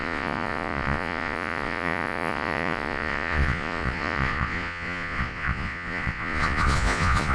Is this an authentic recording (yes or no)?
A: no